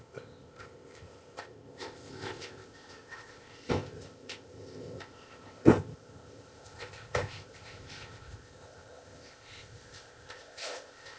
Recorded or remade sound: remade